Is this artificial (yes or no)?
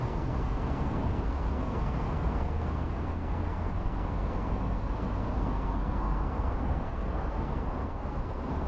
yes